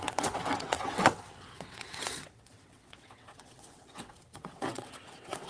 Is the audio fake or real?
fake